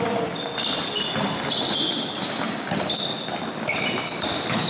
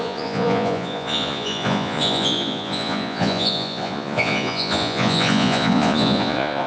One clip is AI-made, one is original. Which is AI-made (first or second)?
second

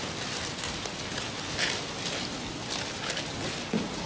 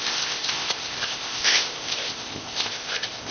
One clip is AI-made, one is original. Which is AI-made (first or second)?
second